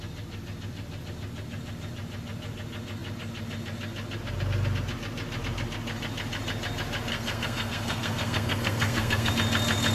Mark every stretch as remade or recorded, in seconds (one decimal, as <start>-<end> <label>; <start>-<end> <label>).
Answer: 0.0-7.1 recorded; 7.1-9.3 remade; 9.3-9.9 recorded